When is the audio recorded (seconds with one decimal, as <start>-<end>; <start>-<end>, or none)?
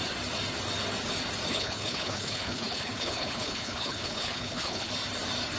0.0-1.5; 4.9-5.6